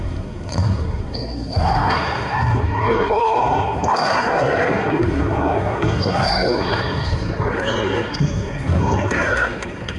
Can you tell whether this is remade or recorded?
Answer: remade